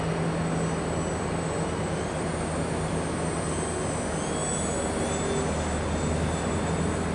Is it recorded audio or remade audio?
recorded